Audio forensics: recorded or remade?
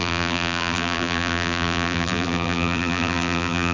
remade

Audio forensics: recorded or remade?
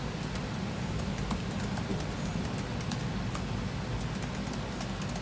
recorded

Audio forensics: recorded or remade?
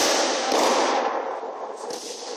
recorded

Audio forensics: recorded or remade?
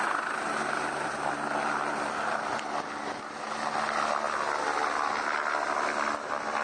recorded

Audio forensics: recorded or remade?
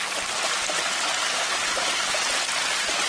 recorded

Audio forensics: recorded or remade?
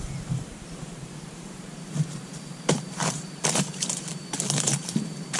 remade